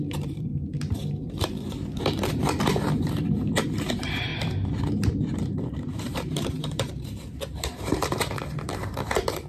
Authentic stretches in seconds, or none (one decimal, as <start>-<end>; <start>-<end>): 0.5-2.0; 4.3-4.8